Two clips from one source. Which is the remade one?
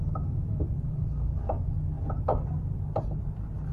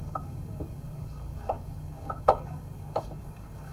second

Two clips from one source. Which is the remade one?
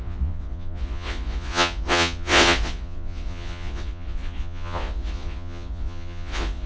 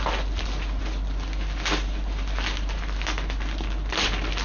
first